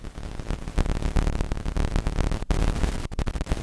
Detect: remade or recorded recorded